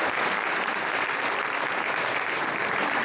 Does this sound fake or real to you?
fake